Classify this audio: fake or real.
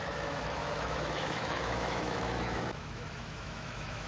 fake